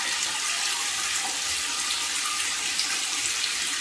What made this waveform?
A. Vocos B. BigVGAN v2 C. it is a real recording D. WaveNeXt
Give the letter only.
C